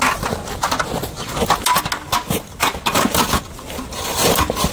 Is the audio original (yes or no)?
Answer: yes